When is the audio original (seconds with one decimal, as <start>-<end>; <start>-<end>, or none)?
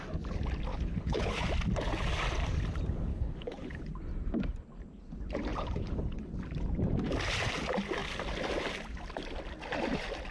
0.0-0.7; 1.5-3.1; 3.9-5.5; 6.3-10.3